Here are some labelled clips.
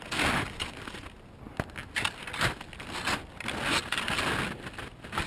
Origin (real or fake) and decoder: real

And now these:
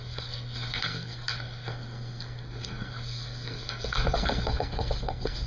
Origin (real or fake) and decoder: fake, codec, SNAC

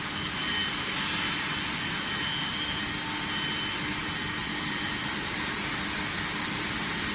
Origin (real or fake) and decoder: real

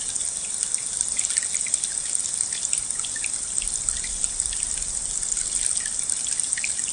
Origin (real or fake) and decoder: real